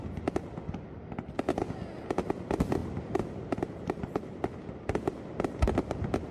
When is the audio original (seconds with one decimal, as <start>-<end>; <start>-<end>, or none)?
0.0-2.8; 4.4-6.3